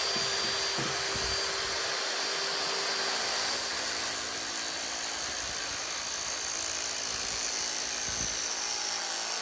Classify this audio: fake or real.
real